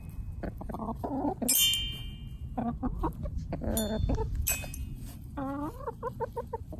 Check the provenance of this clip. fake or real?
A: real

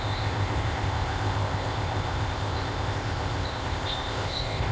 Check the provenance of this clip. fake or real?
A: fake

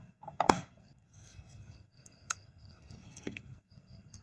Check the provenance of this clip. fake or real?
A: fake